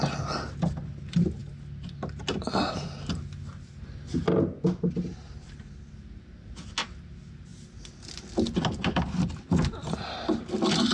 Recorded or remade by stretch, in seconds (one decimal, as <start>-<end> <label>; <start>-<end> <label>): 0.0-10.9 recorded

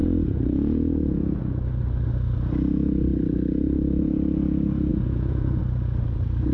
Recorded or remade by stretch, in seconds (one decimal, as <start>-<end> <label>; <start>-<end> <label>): 0.0-1.6 remade; 1.6-4.9 recorded; 4.9-5.6 remade; 5.6-6.5 recorded

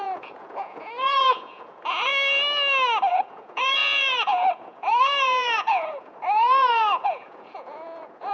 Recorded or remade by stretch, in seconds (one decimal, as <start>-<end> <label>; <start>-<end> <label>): 0.0-2.1 remade; 2.1-3.1 recorded; 3.1-8.3 remade

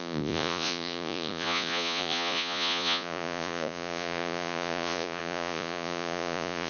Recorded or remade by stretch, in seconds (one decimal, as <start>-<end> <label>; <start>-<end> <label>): 0.0-6.7 remade